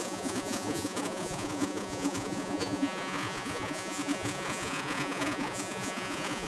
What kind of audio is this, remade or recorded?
remade